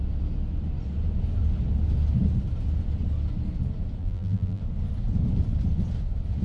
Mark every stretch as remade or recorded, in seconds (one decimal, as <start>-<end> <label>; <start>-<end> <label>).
0.0-4.0 recorded; 4.0-4.6 remade; 4.6-6.4 recorded